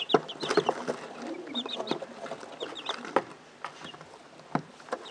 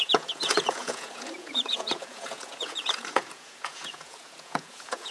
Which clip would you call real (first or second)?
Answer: first